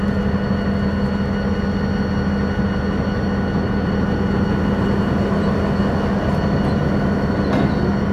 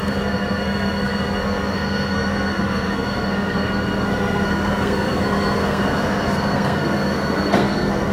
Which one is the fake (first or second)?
second